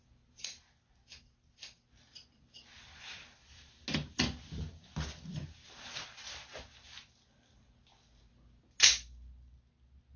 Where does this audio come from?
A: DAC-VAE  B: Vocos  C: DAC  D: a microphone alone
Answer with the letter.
D